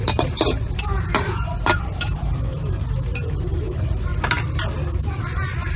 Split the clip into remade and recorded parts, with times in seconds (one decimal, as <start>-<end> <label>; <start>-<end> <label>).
0.0-4.1 remade; 4.1-5.1 recorded; 5.1-5.8 remade